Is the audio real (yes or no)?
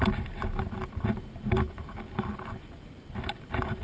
yes